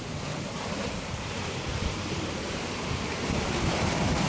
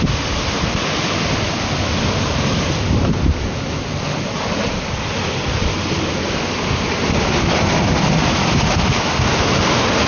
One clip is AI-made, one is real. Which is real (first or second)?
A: second